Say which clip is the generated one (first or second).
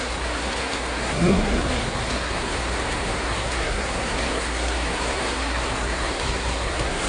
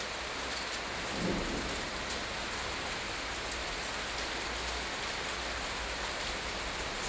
first